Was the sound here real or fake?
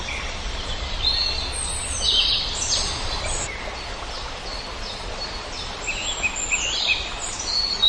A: real